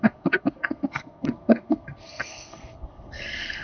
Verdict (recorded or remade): remade